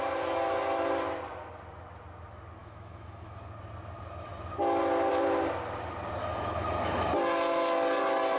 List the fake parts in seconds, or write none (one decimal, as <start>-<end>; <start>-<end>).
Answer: 2.6-3.4; 6.2-7.1